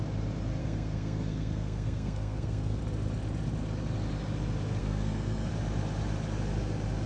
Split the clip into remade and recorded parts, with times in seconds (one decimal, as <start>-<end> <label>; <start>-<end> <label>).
0.0-0.6 recorded; 0.6-2.8 remade; 2.8-4.8 recorded; 4.8-5.5 remade; 5.5-7.1 recorded